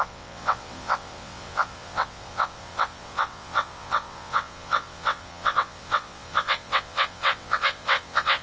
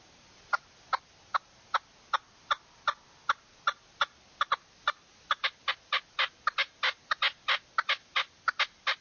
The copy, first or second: first